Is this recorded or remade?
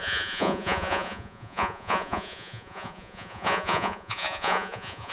remade